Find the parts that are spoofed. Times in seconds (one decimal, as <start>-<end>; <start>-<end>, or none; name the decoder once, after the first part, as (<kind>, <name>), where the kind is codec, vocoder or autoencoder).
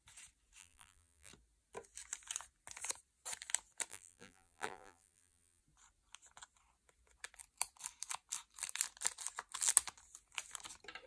0.6-1.3 (vocoder, BigVGAN v2); 3.9-5.6